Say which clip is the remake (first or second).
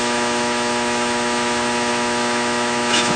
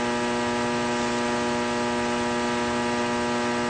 first